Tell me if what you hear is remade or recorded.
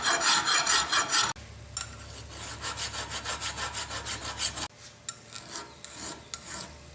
recorded